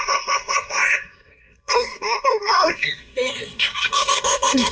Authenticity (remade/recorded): remade